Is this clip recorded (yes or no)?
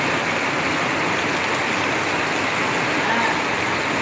yes